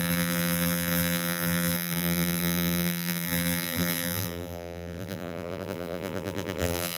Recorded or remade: remade